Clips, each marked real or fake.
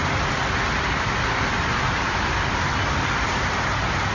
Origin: real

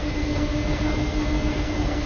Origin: fake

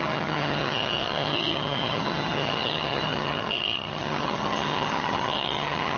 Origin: fake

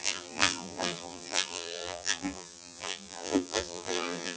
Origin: fake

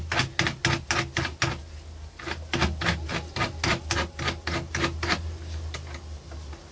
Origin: real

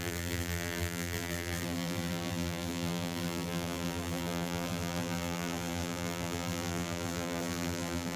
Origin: fake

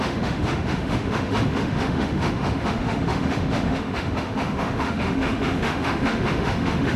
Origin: fake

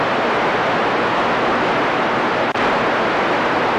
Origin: real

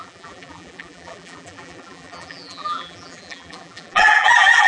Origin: fake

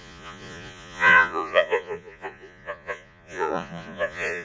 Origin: fake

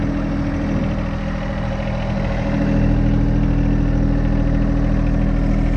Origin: real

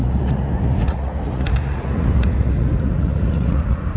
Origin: fake